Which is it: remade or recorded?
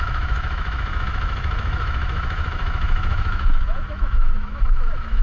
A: remade